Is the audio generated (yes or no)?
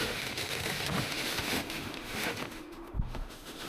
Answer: yes